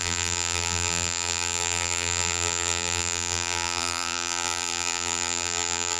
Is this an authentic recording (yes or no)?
no